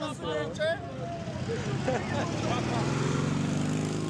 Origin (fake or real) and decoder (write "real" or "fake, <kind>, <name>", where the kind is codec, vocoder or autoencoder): real